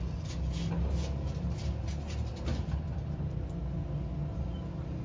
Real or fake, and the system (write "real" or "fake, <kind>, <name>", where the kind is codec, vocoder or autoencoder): real